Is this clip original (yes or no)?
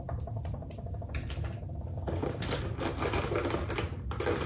yes